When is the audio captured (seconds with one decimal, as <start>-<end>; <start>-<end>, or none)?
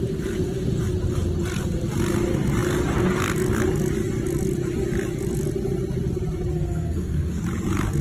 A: 0.0-6.5; 7.4-8.0